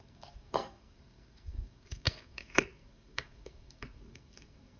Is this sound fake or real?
fake